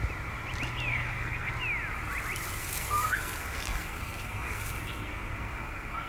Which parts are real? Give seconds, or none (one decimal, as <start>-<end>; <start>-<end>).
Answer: 0.0-0.9; 1.5-2.6